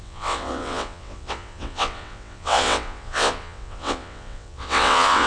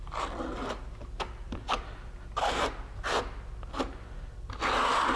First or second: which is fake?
first